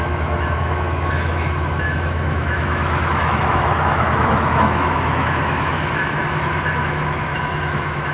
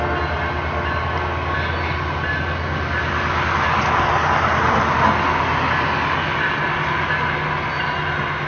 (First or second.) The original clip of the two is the second